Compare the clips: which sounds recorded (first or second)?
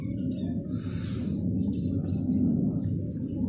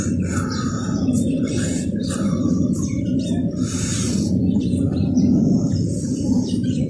first